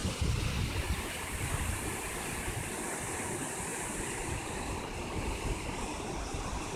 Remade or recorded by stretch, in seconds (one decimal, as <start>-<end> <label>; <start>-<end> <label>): 0.0-1.2 recorded; 1.2-3.7 remade; 3.7-5.1 recorded; 5.1-6.8 remade